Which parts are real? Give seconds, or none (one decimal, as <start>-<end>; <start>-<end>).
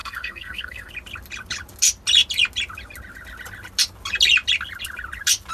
0.9-5.5